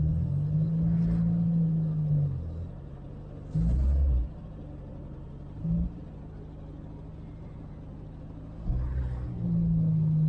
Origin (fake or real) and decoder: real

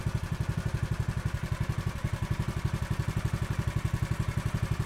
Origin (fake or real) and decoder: fake, vocoder, BigVGAN v2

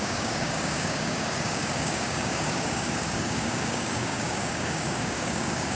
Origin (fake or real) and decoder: fake, codec, DAC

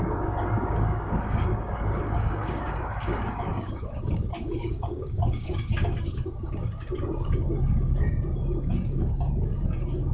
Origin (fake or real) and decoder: fake, codec, DAC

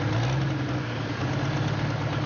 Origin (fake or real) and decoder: real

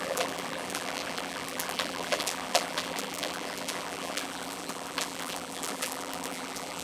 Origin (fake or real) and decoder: fake, vocoder, BigVGAN v2